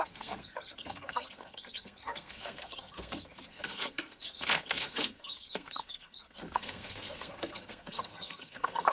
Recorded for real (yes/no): no